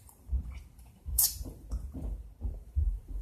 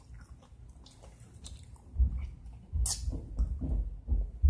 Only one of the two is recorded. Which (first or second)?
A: second